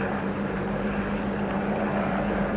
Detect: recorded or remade remade